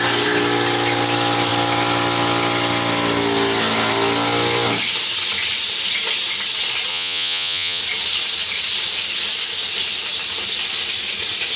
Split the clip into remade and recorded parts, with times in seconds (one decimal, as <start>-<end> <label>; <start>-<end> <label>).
0.0-6.9 recorded; 6.9-7.8 remade; 7.8-11.6 recorded